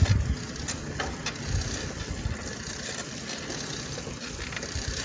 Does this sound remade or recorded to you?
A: recorded